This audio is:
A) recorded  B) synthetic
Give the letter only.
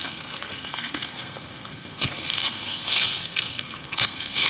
B